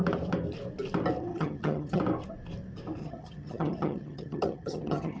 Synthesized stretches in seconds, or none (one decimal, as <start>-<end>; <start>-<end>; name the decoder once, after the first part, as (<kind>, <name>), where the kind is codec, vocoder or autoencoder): 1.3-2.0 (vocoder, HiFi-GAN); 3.0-5.2